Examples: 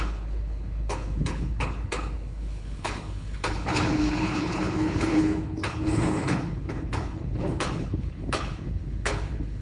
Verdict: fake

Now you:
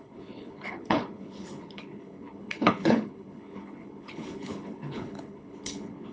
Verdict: fake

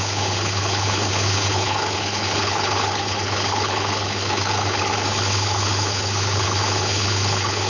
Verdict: fake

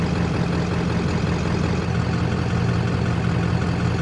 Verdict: real